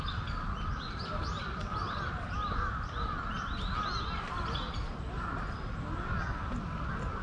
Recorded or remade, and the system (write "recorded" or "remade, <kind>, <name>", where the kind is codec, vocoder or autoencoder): recorded